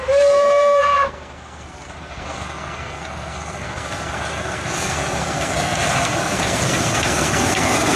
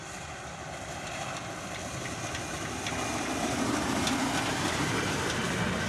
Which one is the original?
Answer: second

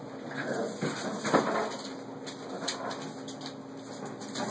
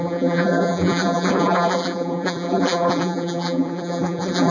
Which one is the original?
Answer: first